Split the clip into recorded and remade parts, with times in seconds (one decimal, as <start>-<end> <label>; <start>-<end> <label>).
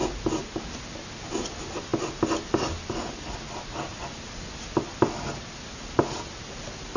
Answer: 0.0-7.0 recorded